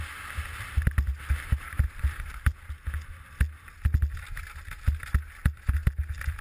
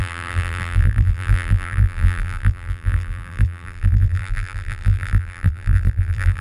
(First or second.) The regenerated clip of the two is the second